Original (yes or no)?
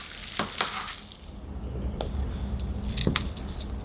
yes